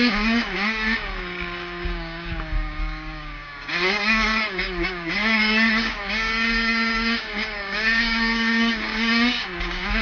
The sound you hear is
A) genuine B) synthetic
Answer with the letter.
B